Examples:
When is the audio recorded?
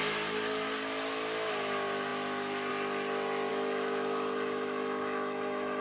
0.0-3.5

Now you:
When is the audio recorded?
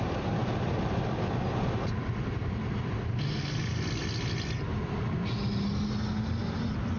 0.0-7.0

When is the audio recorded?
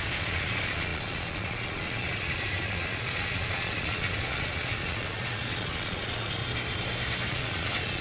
6.4-7.3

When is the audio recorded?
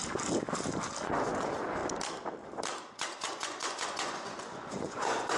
0.0-1.0; 1.8-2.9